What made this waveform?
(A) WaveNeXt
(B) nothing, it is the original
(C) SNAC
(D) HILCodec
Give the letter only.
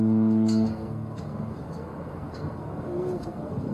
C